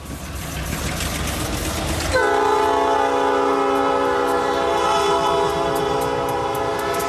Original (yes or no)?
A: yes